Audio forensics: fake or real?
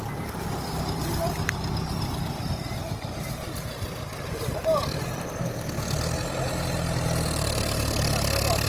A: real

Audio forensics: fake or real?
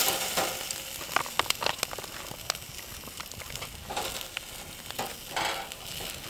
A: real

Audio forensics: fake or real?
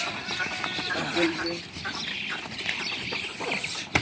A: real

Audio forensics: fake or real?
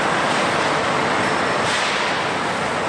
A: real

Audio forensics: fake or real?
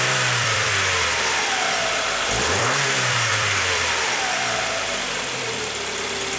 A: fake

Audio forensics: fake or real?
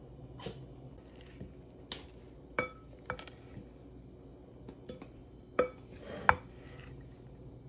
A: real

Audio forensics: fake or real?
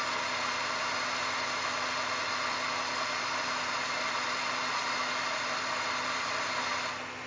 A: real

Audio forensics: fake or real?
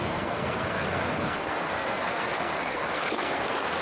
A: fake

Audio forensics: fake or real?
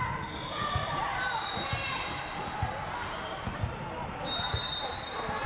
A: real